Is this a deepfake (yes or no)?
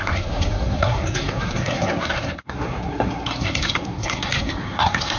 yes